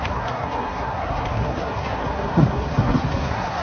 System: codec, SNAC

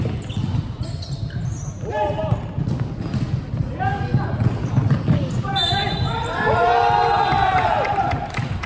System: none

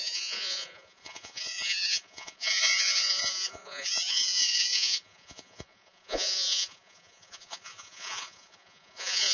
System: vocoder, Vocos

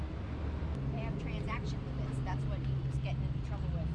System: none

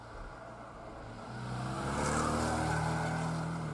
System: none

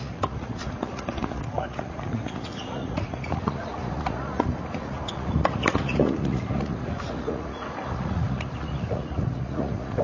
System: vocoder, Vocos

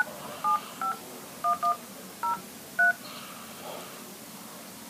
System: none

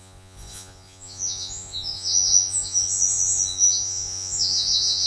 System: vocoder, Vocos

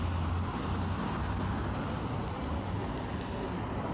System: none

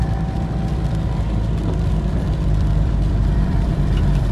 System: vocoder, BigVGAN v2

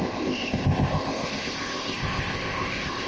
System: codec, ZipCodec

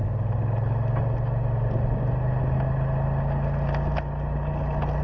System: none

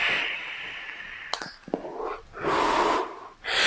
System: none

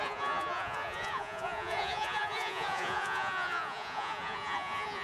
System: vocoder, Vocos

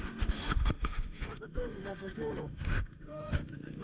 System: autoencoder, DAC-VAE